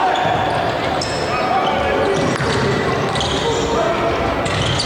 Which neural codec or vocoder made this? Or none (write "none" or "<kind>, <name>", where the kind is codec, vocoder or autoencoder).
none